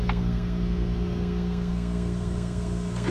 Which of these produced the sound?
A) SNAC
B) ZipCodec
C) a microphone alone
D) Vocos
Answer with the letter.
A